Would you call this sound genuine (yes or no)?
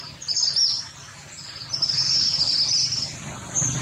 yes